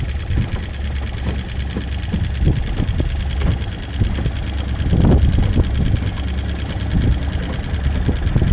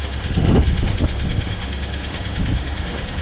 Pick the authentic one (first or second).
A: first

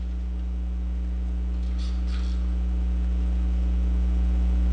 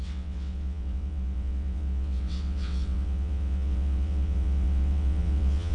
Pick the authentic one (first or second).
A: first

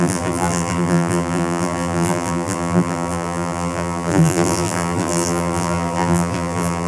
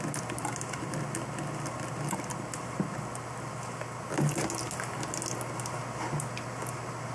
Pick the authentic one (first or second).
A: second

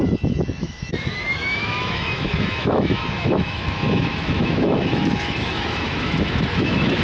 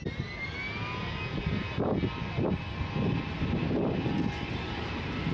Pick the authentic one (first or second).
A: second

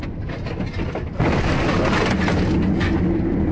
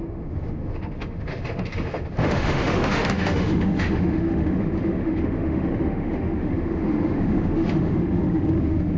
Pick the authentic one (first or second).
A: first